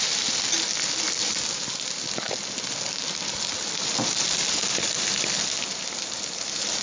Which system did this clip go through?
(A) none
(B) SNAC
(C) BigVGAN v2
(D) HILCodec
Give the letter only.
C